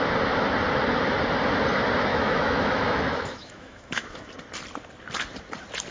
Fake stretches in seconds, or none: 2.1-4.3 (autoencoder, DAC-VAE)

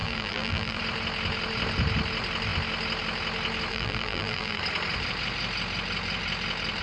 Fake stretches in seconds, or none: 0.0-0.8 (vocoder, BigVGAN v2); 3.7-4.6

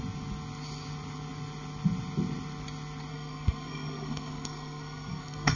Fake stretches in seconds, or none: 3.1-5.6 (codec, SNAC)

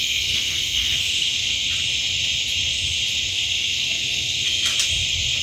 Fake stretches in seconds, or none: 0.0-1.5 (codec, SNAC); 3.3-4.7

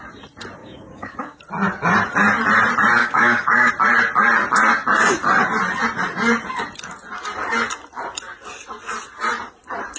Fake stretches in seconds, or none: 0.6-1.4 (codec, DAC); 3.0-3.7

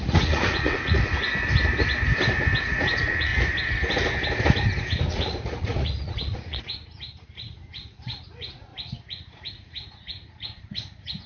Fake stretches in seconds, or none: 0.0-1.1 (vocoder, Vocos); 2.6-3.3; 5.1-8.7; 9.5-11.3